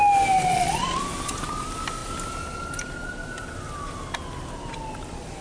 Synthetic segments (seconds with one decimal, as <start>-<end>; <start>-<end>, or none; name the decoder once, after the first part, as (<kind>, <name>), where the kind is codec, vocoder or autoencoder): 0.5-1.0 (vocoder, Vocos)